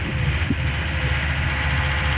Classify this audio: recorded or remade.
recorded